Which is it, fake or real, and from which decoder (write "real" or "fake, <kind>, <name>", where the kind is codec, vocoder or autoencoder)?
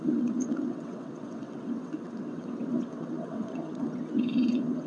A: fake, vocoder, WaveNeXt